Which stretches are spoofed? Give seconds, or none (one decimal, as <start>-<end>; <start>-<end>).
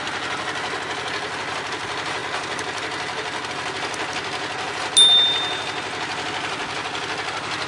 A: none